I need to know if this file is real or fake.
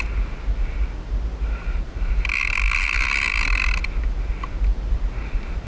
real